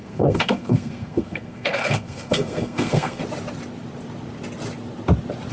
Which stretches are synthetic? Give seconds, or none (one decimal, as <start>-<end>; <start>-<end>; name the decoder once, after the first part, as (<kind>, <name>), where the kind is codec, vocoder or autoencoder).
0.0-3.2 (codec, SNAC)